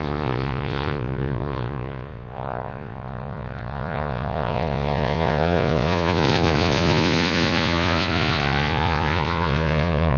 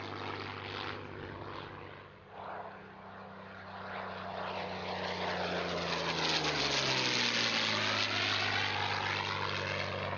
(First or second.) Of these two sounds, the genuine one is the second